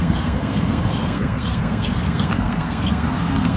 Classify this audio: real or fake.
fake